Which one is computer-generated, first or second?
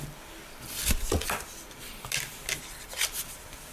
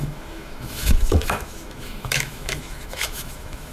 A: second